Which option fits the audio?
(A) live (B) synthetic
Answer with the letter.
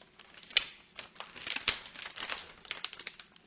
A